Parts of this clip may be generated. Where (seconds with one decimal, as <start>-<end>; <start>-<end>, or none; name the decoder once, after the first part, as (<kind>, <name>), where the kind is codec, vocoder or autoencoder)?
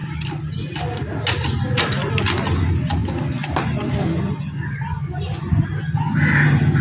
none